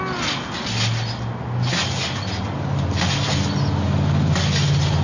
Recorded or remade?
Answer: recorded